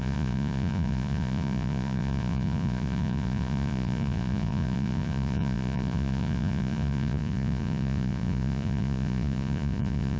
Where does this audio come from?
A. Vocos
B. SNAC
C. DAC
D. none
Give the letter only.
A